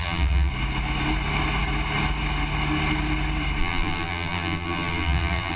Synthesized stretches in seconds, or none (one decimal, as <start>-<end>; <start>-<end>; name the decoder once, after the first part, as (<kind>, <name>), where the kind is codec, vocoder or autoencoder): 0.0-0.5 (vocoder, BigVGAN v2); 3.6-5.6